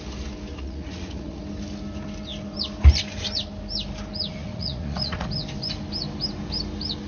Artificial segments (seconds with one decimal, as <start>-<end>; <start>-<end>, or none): 0.5-1.4; 4.4-5.3